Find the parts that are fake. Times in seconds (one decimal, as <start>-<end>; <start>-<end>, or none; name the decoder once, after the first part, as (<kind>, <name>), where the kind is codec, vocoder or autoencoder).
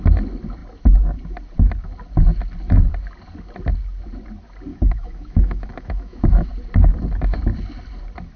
4.7-6.5 (autoencoder, DAC-VAE)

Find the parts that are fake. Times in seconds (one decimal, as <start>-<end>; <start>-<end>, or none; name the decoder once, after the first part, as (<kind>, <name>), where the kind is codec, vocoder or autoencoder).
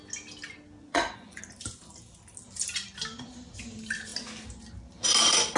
0.8-1.4 (vocoder, Vocos)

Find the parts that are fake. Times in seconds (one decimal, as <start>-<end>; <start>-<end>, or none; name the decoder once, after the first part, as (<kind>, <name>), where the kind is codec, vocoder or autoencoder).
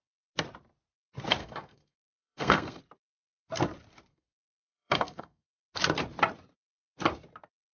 1.4-2.8 (codec, SNAC); 4.1-5.6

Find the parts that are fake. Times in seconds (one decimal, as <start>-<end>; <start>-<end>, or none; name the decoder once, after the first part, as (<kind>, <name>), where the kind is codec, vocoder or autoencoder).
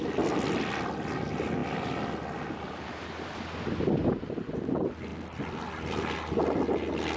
none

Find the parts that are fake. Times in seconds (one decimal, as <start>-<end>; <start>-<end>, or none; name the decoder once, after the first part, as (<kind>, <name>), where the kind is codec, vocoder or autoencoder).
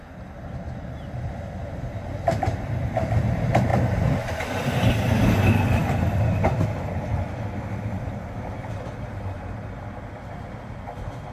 none